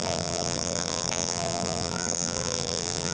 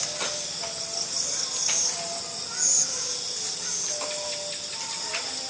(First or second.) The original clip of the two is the second